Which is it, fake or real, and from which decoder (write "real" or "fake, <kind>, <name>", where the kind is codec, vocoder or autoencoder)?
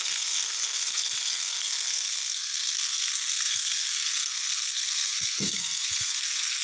fake, codec, SNAC